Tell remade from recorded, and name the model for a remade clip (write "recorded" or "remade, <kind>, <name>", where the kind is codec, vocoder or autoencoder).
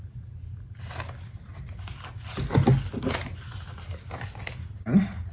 recorded